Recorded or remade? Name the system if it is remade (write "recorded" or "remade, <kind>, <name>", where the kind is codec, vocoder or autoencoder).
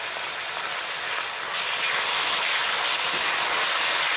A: recorded